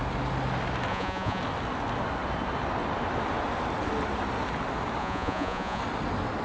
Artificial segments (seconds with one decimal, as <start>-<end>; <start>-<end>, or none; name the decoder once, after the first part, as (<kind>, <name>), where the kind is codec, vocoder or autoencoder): 0.9-1.4 (vocoder, Vocos); 5.0-5.8